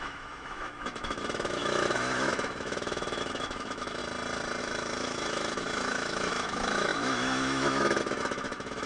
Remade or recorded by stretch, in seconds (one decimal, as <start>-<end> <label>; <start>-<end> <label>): 0.0-4.0 remade; 4.0-4.6 recorded; 4.6-8.9 remade